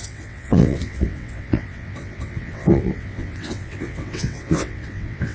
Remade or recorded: remade